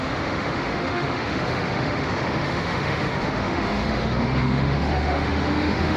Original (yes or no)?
no